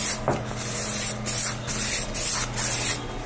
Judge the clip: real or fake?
real